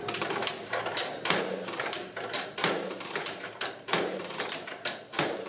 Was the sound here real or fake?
fake